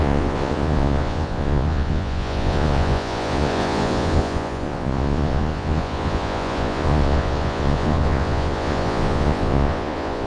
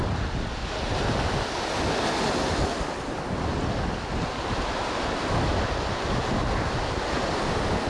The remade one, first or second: first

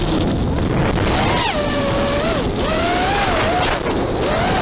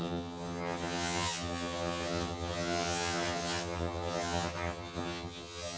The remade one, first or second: second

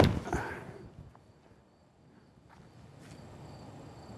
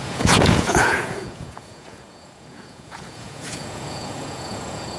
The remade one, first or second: second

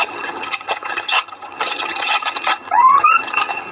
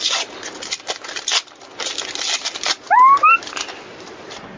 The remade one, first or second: first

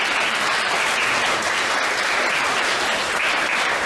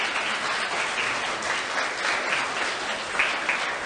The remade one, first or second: first